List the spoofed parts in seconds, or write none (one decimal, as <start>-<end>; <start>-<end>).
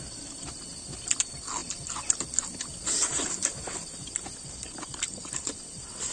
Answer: none